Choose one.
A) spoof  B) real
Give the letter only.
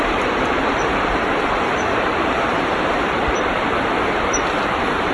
A